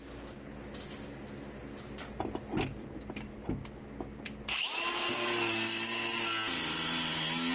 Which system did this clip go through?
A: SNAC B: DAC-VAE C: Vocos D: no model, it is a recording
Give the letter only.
D